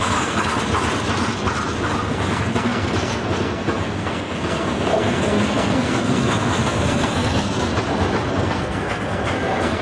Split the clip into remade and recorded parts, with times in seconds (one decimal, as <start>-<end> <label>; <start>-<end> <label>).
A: 0.0-0.5 remade; 0.5-2.1 recorded; 2.1-7.7 remade; 7.7-8.3 recorded; 8.3-9.8 remade